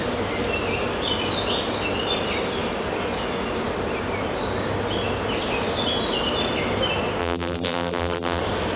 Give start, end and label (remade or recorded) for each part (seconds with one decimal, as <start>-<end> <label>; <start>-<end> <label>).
0.0-7.2 recorded; 7.2-8.4 remade; 8.4-8.8 recorded